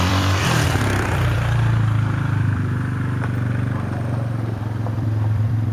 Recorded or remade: remade